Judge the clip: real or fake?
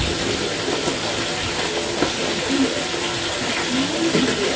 real